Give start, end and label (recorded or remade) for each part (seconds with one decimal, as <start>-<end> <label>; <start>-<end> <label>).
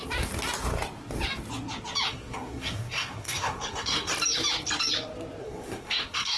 0.0-2.1 recorded; 2.1-4.1 remade; 4.1-5.4 recorded; 5.4-6.4 remade